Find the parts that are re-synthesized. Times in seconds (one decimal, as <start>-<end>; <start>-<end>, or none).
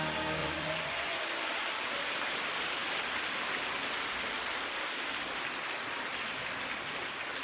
0.4-1.2